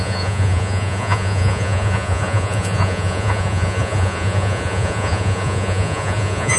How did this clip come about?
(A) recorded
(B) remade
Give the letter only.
B